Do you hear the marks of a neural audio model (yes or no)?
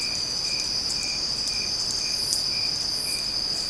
no